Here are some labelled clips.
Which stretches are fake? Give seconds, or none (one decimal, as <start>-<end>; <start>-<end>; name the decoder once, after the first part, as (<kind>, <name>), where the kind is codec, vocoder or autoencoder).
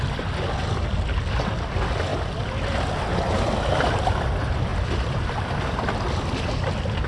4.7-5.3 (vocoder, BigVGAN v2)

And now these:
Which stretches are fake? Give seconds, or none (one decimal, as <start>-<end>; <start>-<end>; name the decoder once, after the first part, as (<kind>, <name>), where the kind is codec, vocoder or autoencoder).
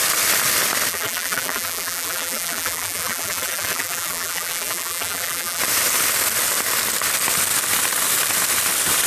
0.9-5.6 (vocoder, BigVGAN v2)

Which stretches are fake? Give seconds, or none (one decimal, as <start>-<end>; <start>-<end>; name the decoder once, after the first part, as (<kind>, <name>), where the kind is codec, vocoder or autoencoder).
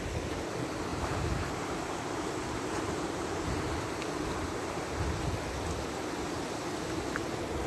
0.9-5.5 (vocoder, BigVGAN v2)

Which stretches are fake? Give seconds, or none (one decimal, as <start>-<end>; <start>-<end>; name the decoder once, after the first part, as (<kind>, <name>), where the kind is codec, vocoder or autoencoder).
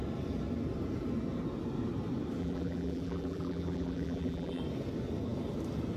2.4-4.6 (vocoder, BigVGAN v2)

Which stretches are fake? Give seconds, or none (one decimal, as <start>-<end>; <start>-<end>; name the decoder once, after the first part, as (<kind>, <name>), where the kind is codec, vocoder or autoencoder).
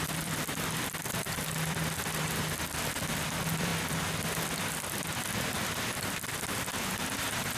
0.0-3.7 (vocoder, BigVGAN v2); 5.8-7.6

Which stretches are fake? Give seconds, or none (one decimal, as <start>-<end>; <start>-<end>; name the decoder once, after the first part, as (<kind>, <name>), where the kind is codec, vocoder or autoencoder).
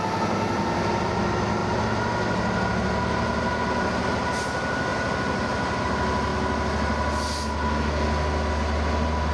none